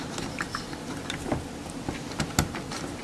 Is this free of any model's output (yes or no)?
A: yes